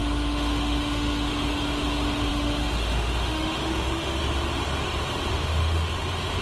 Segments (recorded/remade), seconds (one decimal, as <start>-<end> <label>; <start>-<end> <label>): 0.0-1.3 remade; 1.3-2.3 recorded; 2.3-4.2 remade; 4.2-5.3 recorded; 5.3-5.9 remade; 5.9-6.4 recorded